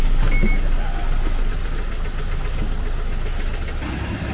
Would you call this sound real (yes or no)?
yes